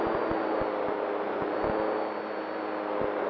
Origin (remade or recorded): recorded